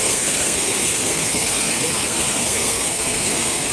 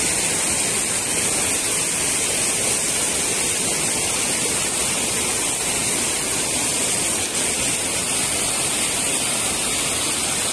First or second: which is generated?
first